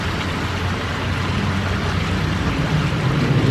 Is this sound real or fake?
real